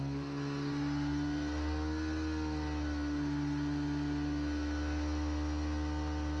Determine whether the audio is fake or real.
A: real